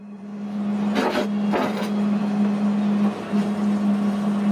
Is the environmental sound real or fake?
real